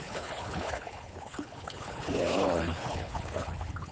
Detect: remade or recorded remade